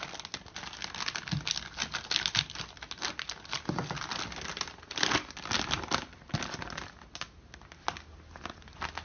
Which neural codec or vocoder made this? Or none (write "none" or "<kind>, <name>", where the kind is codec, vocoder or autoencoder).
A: none